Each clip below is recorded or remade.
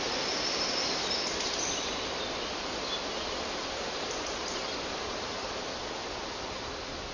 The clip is recorded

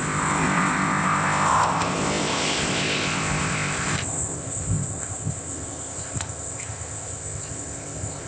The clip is remade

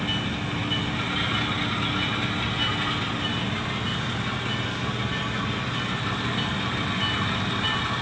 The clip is recorded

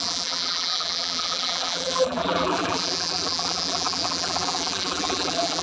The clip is remade